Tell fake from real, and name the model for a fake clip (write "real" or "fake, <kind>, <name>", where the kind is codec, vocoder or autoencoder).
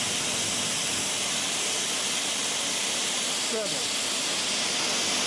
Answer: real